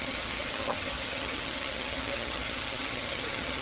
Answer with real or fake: fake